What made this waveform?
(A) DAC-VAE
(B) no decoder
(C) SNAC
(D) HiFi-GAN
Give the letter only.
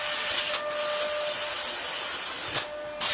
B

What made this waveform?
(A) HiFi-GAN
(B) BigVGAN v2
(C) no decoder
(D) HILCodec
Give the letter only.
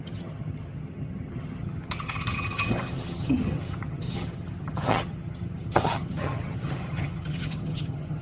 A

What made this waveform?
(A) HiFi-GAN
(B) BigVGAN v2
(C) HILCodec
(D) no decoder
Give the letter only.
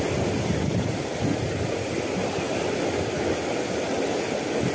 D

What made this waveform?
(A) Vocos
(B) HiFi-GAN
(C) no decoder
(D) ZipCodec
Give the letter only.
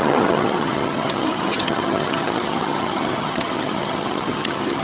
B